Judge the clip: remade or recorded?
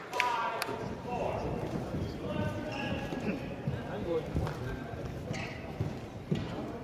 remade